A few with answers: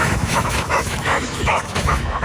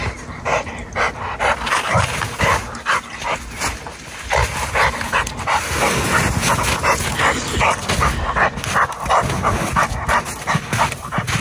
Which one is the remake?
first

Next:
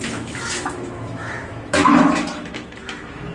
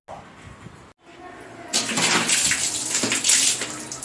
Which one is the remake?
first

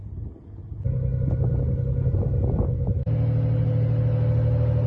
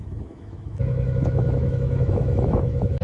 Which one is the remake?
second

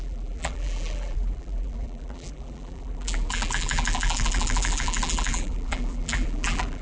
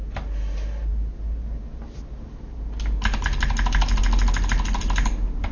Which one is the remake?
first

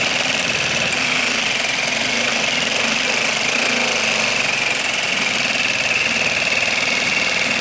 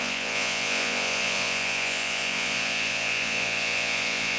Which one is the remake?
second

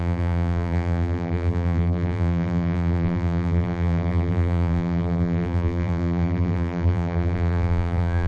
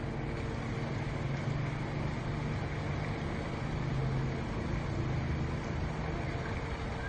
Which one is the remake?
first